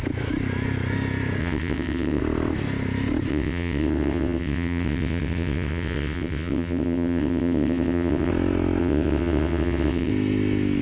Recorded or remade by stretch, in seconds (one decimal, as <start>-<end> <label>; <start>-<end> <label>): 0.0-1.4 recorded; 1.4-2.2 remade; 2.2-3.3 recorded; 3.3-8.3 remade; 8.3-8.8 recorded; 8.8-10.1 remade; 10.1-10.8 recorded